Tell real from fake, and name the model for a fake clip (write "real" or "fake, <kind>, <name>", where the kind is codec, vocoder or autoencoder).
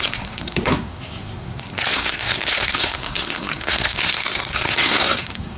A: fake, codec, SNAC